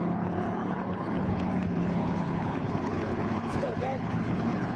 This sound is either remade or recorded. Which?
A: remade